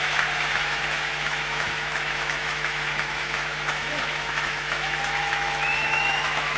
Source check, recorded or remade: remade